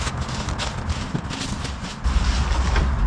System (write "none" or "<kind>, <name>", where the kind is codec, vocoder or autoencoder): none